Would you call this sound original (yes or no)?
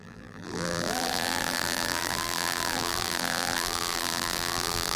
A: no